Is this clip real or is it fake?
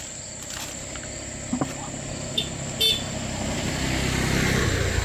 real